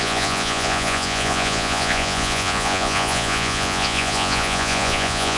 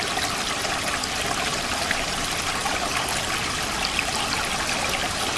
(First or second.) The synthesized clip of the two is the first